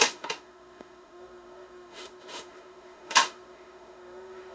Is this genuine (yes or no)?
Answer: no